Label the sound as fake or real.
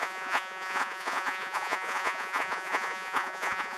fake